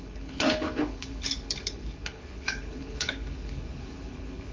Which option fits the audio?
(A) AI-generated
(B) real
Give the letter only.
A